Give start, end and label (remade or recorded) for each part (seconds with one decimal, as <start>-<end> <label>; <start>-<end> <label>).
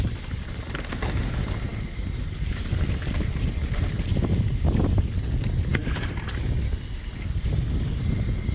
0.0-8.5 recorded